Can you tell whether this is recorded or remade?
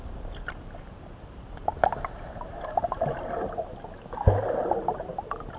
recorded